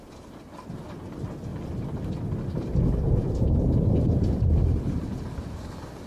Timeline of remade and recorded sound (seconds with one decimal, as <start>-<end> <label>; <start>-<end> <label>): 0.0-6.1 recorded